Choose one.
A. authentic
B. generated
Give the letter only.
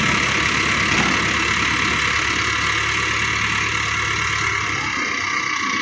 A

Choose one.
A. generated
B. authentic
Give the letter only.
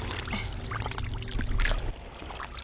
B